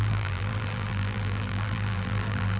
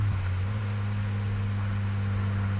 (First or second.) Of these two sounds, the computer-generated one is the first